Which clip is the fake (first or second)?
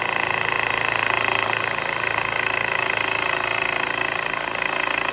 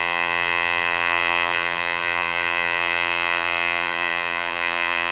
second